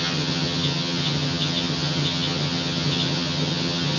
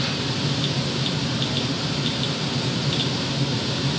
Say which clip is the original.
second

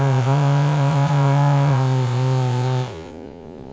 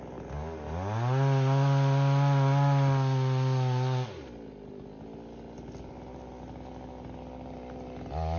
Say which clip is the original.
second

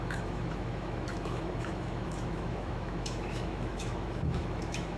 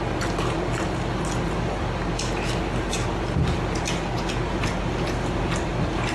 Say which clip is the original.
second